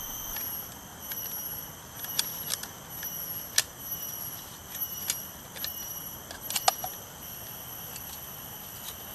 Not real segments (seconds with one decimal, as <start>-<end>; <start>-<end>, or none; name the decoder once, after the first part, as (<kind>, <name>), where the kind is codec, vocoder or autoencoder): none